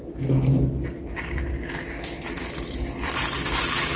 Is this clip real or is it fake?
real